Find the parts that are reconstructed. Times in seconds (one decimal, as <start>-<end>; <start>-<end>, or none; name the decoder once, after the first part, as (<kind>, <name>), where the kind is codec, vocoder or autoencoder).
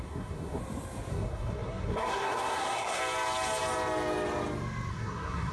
0.0-0.6 (codec, SNAC); 1.1-3.0; 4.9-5.5